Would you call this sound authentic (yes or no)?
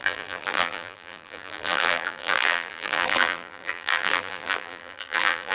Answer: no